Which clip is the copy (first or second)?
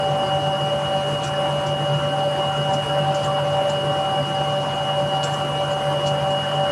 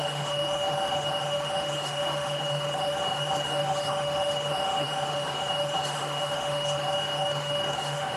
second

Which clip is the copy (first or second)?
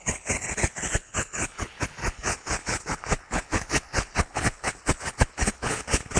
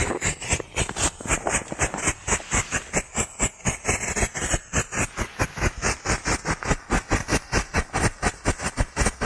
first